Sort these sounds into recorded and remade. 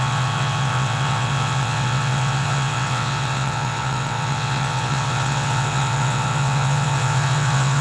remade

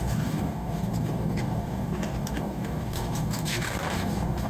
remade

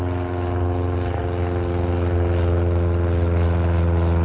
recorded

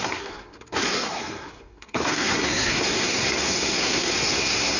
remade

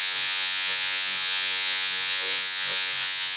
remade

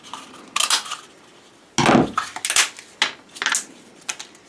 recorded